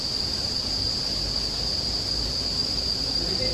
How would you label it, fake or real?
real